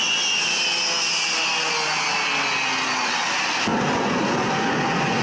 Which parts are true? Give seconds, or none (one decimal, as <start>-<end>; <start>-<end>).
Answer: 0.0-3.7